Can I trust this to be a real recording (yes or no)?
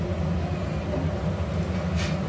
yes